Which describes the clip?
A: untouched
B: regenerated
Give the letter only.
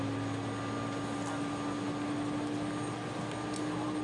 A